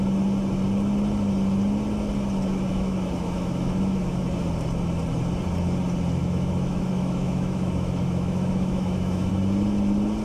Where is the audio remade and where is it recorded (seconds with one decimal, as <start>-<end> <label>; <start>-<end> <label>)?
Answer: 0.0-2.7 recorded; 2.7-4.2 remade; 4.2-6.2 recorded; 6.2-9.3 remade; 9.3-10.2 recorded